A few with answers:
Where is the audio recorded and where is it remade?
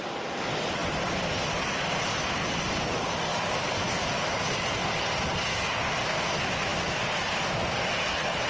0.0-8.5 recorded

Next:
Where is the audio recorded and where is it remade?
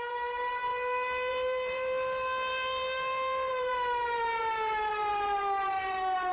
0.0-0.7 remade; 0.7-1.3 recorded; 1.3-6.3 remade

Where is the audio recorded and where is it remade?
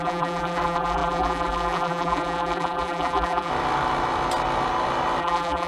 0.0-3.5 remade; 3.5-5.2 recorded; 5.2-5.7 remade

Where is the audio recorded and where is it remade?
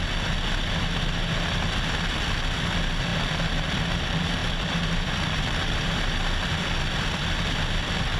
0.0-3.1 recorded; 3.1-3.9 remade; 3.9-4.4 recorded; 4.4-7.3 remade; 7.3-8.2 recorded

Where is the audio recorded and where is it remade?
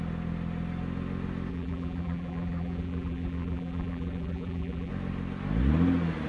0.0-1.5 recorded; 1.5-4.9 remade; 4.9-6.3 recorded